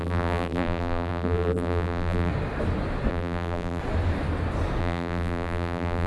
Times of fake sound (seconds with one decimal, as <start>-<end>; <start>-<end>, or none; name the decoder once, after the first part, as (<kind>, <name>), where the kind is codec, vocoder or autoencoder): 0.0-2.3 (vocoder, BigVGAN v2); 3.1-3.8; 4.8-6.1